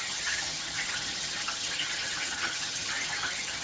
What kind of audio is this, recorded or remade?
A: remade